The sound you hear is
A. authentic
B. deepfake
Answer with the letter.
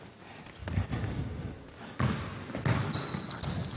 A